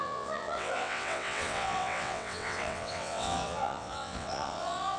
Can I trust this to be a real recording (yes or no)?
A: no